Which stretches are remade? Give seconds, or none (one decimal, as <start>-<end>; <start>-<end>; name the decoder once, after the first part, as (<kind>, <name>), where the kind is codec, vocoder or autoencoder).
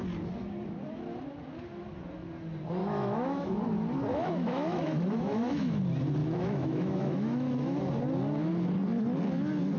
2.8-3.6 (autoencoder, DAC-VAE); 4.1-5.8; 6.2-7.8